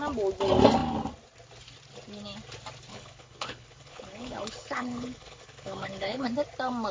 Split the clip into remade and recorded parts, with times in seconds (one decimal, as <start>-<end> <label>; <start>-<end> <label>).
0.0-2.9 recorded; 2.9-6.3 remade; 6.3-6.9 recorded

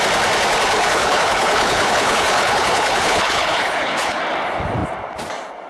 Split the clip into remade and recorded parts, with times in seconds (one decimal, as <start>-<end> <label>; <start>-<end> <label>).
0.0-0.8 recorded; 0.8-4.2 remade; 4.2-5.7 recorded

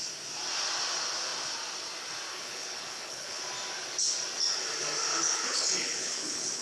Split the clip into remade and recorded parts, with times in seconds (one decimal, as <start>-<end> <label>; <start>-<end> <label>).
0.0-2.3 recorded; 2.3-3.4 remade; 3.4-5.1 recorded; 5.1-6.6 remade

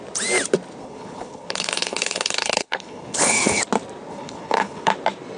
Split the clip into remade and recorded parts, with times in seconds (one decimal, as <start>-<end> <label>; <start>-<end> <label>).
0.0-0.8 recorded; 0.8-3.6 remade; 3.6-4.1 recorded; 4.1-4.9 remade; 4.9-5.4 recorded

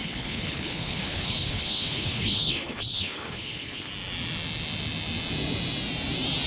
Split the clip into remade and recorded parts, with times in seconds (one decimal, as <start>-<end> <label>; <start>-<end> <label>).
0.0-3.9 remade; 3.9-6.5 recorded